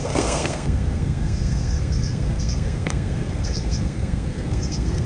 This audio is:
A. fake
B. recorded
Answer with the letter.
A